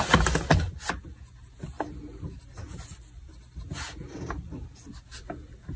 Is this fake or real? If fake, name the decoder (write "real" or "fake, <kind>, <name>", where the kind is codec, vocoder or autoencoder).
real